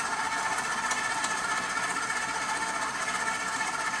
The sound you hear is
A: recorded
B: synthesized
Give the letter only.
A